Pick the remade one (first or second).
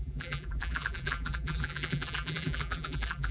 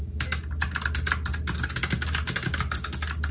first